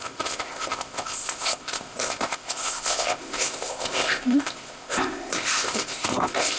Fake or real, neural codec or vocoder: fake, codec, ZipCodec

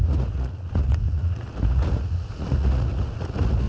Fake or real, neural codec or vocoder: fake, vocoder, Vocos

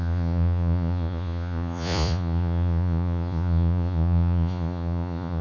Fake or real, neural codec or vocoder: fake, vocoder, Vocos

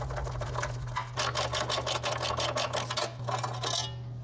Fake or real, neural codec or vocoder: real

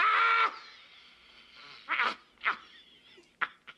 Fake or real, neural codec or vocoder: real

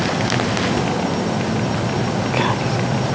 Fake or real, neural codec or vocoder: real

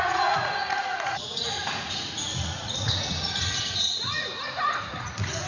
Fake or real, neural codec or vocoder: fake, vocoder, Vocos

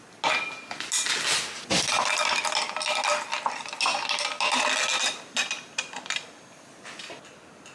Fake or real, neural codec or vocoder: real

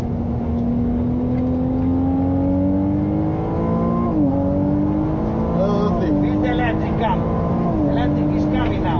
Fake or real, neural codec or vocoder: real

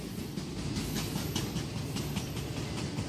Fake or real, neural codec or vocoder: real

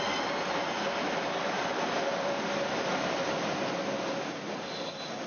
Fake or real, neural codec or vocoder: real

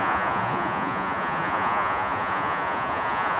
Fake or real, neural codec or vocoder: fake, vocoder, Vocos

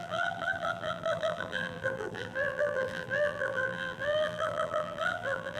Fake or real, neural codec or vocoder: fake, vocoder, BigVGAN v2